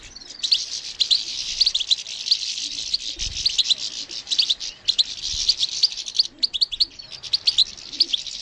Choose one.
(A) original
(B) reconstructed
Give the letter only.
A